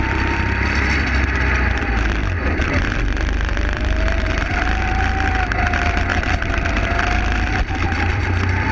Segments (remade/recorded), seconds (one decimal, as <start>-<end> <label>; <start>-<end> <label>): 0.0-8.7 remade